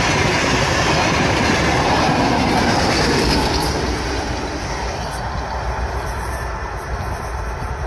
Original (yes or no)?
yes